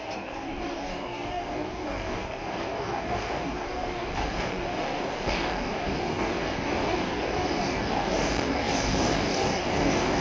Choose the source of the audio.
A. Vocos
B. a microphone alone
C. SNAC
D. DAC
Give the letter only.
D